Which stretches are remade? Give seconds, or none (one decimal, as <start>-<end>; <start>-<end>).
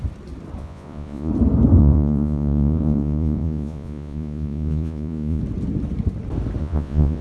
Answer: 0.6-1.3; 1.8-5.4; 6.6-7.2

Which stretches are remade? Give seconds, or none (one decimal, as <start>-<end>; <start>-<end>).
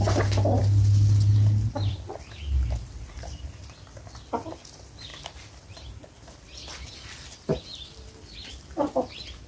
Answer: none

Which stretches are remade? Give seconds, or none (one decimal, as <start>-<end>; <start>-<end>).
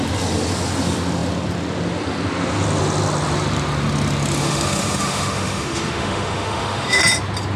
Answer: 4.4-7.0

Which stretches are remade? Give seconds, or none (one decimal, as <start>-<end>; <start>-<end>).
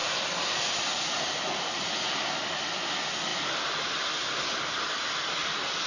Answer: 0.0-0.5; 3.3-4.2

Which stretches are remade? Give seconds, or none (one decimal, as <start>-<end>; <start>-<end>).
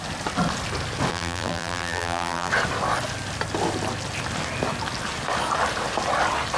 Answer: 1.1-2.5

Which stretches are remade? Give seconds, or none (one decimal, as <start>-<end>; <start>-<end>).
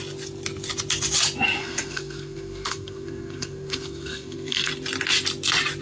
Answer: 1.6-4.7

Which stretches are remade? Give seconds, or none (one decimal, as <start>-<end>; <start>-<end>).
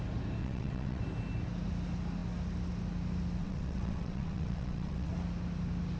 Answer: 0.4-1.0; 3.4-5.1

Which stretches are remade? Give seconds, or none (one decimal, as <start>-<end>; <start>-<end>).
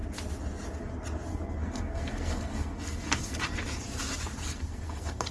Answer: 1.3-3.4; 4.4-5.3